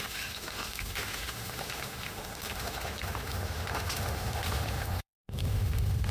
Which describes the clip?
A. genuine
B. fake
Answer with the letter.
B